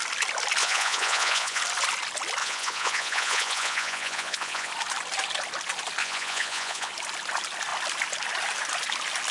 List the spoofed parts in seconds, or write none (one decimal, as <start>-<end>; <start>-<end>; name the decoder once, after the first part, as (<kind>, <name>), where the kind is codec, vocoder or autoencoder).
0.6-1.6 (vocoder, Vocos); 2.4-4.7; 6.0-6.9